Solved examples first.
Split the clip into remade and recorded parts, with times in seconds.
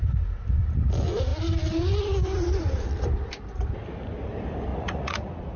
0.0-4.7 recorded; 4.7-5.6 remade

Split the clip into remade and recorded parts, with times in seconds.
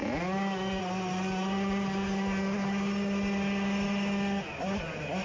0.0-5.2 recorded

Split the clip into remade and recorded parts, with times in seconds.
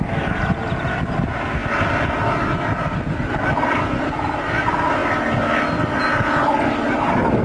0.0-7.4 recorded